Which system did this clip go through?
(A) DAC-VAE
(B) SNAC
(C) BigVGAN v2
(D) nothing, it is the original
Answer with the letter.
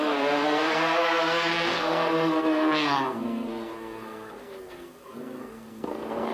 B